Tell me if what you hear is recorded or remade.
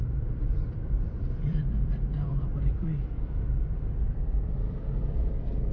remade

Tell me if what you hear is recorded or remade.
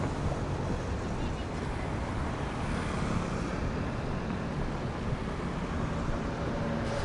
recorded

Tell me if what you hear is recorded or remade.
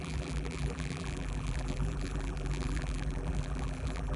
remade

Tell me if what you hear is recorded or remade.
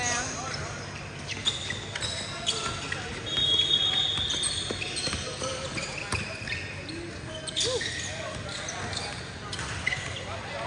recorded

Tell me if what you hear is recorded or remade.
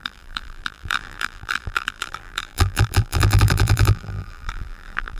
remade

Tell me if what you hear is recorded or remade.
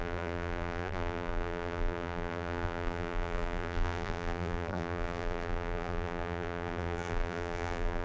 remade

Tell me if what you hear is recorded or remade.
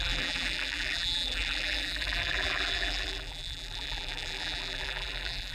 remade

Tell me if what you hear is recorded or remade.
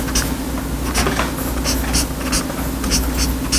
recorded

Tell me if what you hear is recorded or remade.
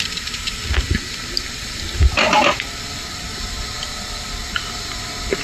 recorded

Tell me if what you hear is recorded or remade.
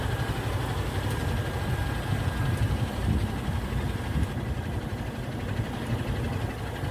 recorded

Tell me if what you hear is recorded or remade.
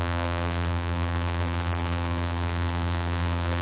remade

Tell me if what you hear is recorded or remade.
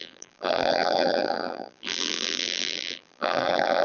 remade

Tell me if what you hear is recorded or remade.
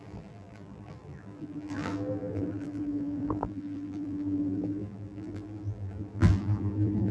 remade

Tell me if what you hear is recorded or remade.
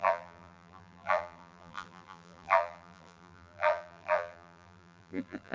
remade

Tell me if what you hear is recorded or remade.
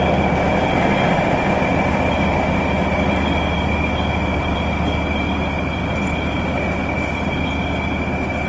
recorded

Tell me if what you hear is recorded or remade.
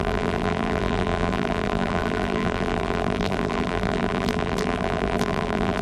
remade